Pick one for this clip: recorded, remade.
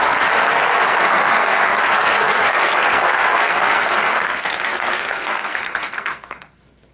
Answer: remade